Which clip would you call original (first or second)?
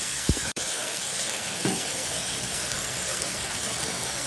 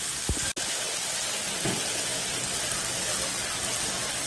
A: second